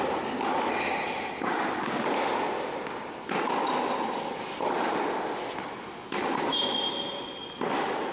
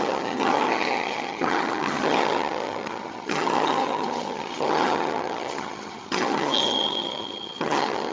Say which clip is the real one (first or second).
first